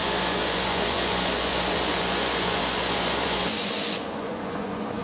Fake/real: fake